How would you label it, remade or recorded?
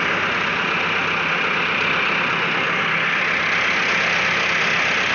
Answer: recorded